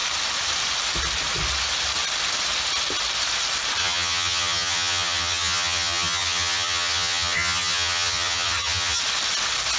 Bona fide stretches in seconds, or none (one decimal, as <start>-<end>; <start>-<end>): 0.0-3.8; 9.0-9.8